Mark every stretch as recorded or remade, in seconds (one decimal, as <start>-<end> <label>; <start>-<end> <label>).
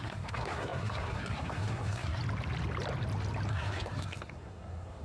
0.0-2.2 remade; 2.2-3.5 recorded; 3.5-5.0 remade